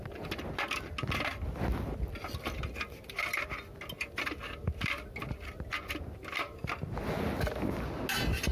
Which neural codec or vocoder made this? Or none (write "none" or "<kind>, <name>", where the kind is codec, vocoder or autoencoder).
none